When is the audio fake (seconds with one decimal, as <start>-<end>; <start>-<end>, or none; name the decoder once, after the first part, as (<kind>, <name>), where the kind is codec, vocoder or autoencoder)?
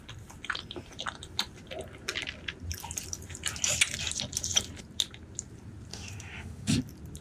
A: 5.9-6.8 (autoencoder, DAC-VAE)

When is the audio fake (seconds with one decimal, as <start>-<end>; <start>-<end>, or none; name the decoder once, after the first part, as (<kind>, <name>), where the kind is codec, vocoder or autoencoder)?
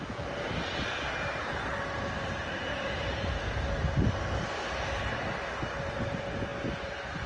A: none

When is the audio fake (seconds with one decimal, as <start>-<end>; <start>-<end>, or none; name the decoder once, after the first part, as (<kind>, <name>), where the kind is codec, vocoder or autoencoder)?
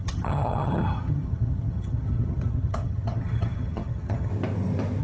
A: 0.0-4.3 (vocoder, HiFi-GAN)